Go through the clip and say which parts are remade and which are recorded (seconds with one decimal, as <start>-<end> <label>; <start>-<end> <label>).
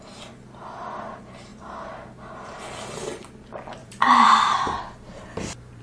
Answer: 0.0-3.8 recorded; 3.8-5.8 remade